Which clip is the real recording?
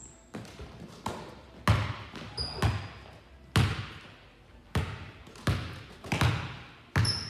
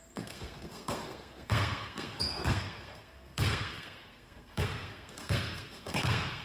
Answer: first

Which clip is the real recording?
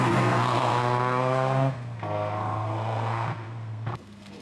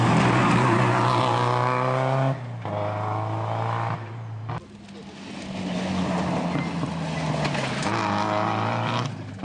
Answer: second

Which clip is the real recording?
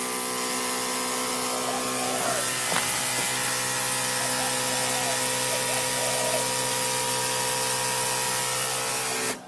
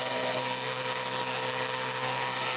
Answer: first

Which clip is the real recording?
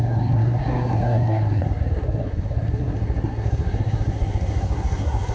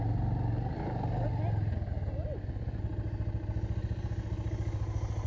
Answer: second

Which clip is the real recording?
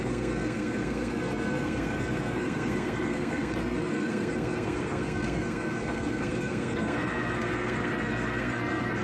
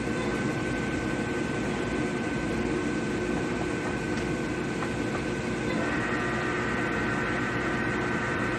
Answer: second